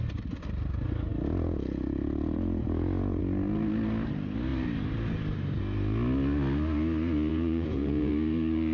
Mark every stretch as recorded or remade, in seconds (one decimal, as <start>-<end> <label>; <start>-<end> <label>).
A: 0.0-7.3 recorded; 7.3-8.1 remade; 8.1-8.7 recorded